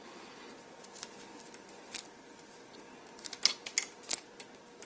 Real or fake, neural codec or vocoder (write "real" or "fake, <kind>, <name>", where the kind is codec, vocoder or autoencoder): real